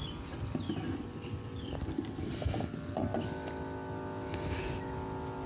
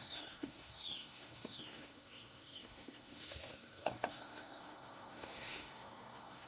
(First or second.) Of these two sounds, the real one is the first